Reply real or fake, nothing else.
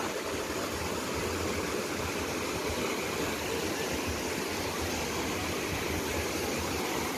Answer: real